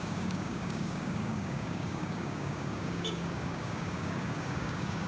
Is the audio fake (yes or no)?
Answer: yes